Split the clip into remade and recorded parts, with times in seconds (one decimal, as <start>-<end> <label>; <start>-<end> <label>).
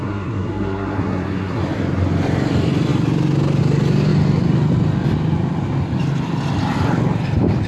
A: 0.0-1.6 remade; 1.6-7.7 recorded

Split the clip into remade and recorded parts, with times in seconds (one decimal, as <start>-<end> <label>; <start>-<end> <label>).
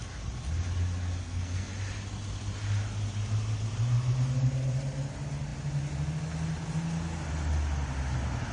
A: 0.0-1.2 recorded; 1.2-1.7 remade; 1.7-8.5 recorded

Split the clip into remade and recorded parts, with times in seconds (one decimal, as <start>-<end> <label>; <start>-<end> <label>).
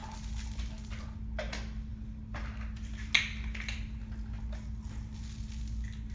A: 0.0-6.1 recorded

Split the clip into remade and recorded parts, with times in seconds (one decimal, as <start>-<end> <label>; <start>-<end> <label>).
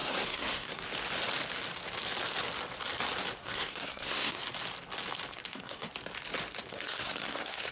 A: 0.0-0.8 remade; 0.8-3.4 recorded; 3.4-4.4 remade; 4.4-5.3 recorded; 5.3-5.9 remade; 5.9-6.7 recorded; 6.7-7.7 remade